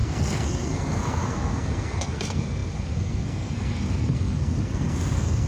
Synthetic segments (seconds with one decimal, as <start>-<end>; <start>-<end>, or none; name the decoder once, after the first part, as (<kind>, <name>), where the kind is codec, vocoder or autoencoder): 0.0-5.5 (codec, SNAC)